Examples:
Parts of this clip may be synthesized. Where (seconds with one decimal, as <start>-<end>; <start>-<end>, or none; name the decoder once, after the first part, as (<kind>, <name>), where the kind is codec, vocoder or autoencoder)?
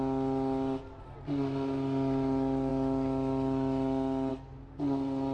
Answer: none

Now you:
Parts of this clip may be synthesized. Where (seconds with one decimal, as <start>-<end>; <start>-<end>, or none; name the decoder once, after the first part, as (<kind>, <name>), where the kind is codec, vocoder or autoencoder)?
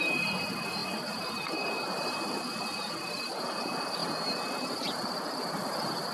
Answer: 0.8-2.9 (vocoder, BigVGAN v2)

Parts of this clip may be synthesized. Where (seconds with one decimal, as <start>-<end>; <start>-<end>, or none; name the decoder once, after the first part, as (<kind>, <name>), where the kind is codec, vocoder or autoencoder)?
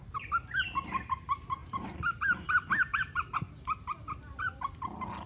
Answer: 1.6-4.8 (vocoder, BigVGAN v2)